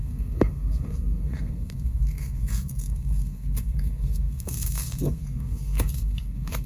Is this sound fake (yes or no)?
yes